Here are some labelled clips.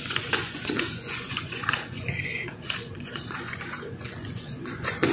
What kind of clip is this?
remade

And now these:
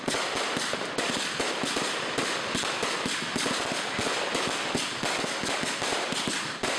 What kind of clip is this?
recorded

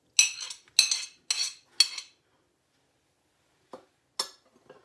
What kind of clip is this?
recorded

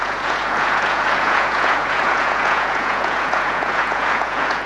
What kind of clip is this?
remade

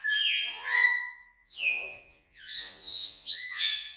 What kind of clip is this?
remade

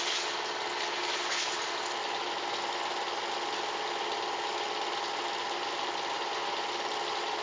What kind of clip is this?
recorded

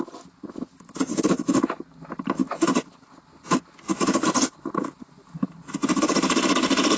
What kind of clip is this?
recorded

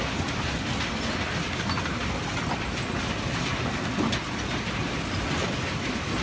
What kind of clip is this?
recorded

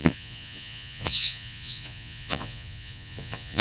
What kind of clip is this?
remade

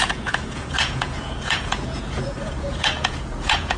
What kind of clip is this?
remade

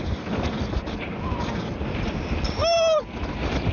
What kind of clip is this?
recorded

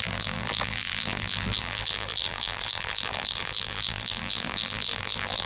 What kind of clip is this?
remade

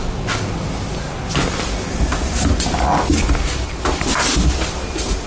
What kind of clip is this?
recorded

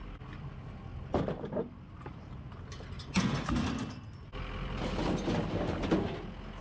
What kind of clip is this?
recorded